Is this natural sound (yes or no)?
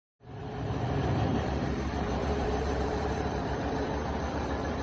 no